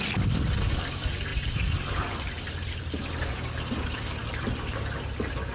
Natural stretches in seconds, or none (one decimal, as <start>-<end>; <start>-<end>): 0.0-1.3; 2.8-5.5